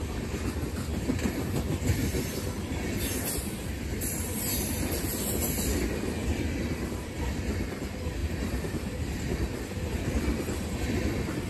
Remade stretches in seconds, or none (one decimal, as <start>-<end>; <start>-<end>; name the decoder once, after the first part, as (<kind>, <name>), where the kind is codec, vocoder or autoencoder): 0.0-11.5 (vocoder, BigVGAN v2)